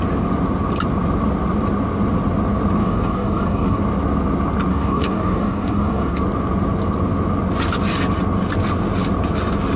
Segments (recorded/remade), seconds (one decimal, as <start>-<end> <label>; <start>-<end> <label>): 0.0-2.8 recorded; 2.8-3.8 remade; 3.8-4.7 recorded; 4.7-6.2 remade; 6.2-9.8 recorded